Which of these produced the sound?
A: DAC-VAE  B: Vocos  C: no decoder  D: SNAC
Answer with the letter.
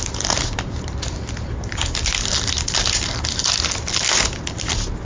C